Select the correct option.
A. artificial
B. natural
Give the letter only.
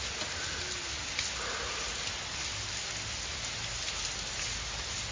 B